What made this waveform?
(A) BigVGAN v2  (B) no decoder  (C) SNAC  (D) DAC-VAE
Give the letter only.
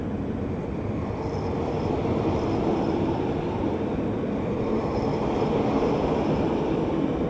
B